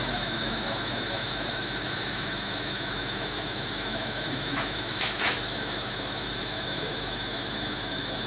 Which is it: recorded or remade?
remade